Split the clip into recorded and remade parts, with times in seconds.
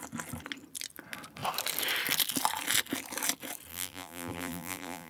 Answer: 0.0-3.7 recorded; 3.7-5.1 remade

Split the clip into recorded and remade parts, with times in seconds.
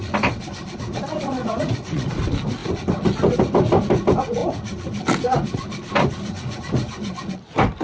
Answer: 0.0-1.4 recorded; 1.4-2.1 remade; 2.1-7.8 recorded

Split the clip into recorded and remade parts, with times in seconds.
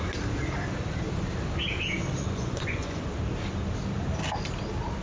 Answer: 0.0-2.2 recorded; 2.2-3.0 remade; 3.0-5.0 recorded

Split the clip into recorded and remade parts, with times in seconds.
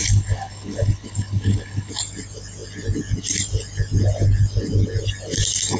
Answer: 0.0-1.9 remade; 1.9-5.8 recorded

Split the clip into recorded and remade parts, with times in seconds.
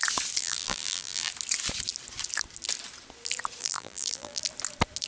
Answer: 0.0-0.4 recorded; 0.4-1.3 remade; 1.3-3.6 recorded; 3.6-4.4 remade; 4.4-5.1 recorded